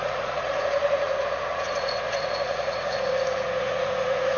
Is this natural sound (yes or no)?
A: no